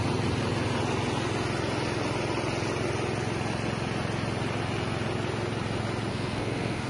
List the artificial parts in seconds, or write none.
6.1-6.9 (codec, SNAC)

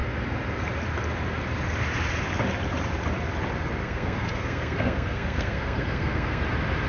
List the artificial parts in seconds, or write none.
3.8-6.4 (codec, SNAC)

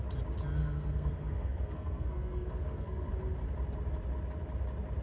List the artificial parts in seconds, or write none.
0.6-3.1 (codec, SNAC)

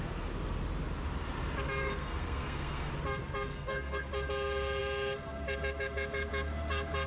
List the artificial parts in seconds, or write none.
1.8-2.9 (codec, SNAC); 3.5-4.1

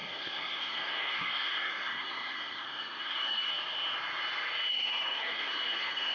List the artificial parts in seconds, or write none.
0.0-3.5 (codec, SNAC); 4.7-6.1

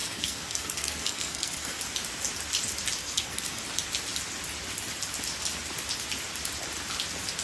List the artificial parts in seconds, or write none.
0.0-1.8 (codec, SNAC); 3.0-3.6

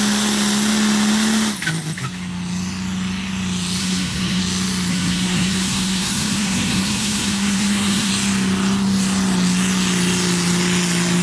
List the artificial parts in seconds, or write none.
3.8-4.4 (codec, SNAC); 4.9-8.1